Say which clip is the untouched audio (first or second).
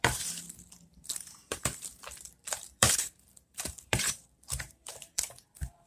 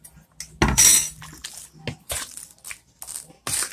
second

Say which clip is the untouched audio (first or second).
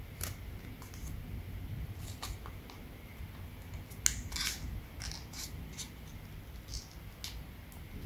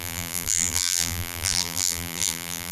first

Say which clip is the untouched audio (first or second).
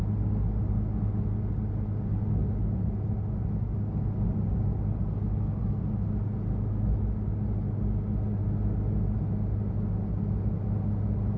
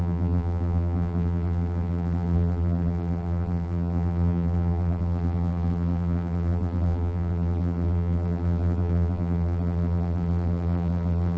first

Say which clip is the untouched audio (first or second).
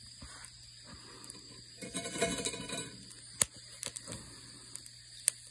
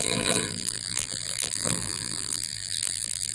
first